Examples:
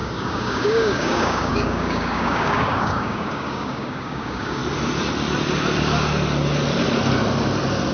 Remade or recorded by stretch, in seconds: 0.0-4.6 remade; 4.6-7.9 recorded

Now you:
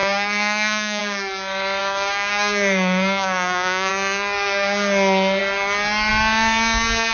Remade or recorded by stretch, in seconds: 0.0-1.0 remade; 1.0-1.8 recorded; 1.8-3.9 remade; 3.9-7.1 recorded